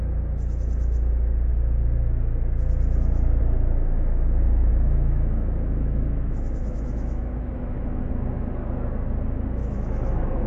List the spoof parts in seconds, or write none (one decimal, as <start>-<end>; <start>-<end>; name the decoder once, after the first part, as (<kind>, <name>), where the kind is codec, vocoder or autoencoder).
4.7-8.1 (autoencoder, DAC-VAE); 9.6-10.5